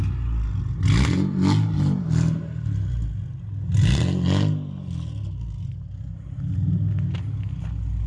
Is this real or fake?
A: real